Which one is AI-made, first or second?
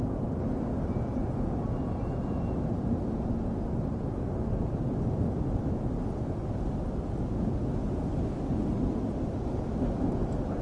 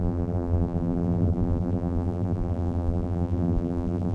second